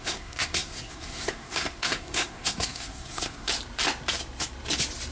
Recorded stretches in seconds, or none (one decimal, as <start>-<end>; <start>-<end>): 3.5-5.1